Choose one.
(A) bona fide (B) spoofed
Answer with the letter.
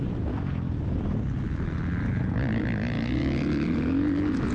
A